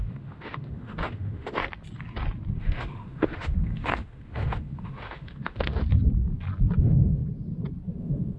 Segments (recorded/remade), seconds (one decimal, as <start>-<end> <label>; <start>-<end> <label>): 0.0-1.6 remade; 1.6-2.6 recorded; 2.6-5.8 remade; 5.8-6.8 recorded; 6.8-7.2 remade; 7.2-8.0 recorded; 8.0-8.4 remade